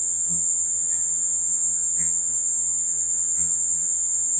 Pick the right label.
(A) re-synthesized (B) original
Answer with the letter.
A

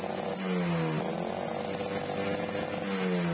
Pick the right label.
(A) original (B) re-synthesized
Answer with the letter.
A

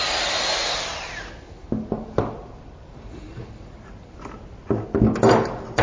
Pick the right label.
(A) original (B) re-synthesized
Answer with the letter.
A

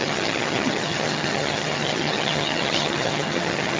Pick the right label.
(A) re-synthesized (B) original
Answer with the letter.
A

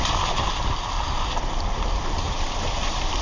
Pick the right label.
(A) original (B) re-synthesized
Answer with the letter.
A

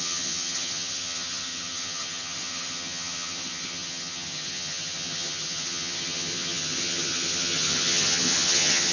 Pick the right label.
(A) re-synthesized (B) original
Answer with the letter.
A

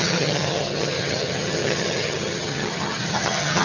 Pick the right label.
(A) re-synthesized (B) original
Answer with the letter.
A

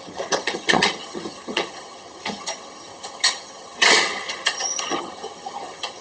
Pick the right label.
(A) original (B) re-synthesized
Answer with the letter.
B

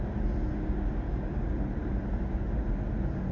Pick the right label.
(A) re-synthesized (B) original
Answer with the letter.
B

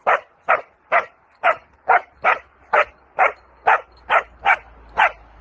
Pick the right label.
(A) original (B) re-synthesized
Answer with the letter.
A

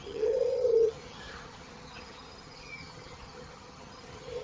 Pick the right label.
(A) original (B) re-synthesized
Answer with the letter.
B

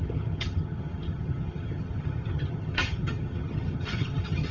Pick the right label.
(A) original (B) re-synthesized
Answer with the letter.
B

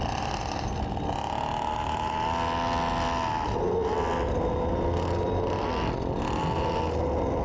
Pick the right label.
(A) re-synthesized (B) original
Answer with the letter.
B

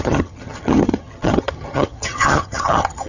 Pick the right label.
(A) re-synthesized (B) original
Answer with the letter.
A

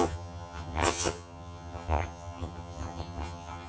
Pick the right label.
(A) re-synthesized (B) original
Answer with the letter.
A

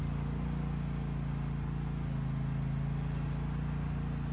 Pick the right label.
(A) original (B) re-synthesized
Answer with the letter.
A